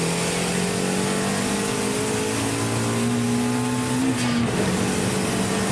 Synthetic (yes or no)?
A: no